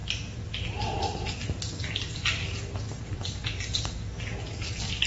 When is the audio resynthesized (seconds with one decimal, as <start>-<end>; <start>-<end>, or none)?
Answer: none